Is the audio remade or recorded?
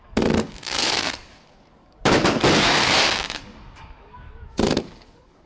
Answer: remade